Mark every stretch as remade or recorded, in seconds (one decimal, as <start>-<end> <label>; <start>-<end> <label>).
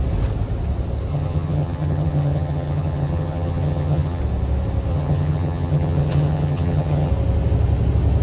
0.0-1.1 recorded; 1.1-4.2 remade; 4.2-4.9 recorded; 4.9-7.1 remade; 7.1-8.2 recorded